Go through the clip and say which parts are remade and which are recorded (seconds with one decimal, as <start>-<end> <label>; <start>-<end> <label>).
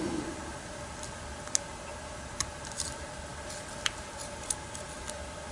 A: 0.0-5.5 recorded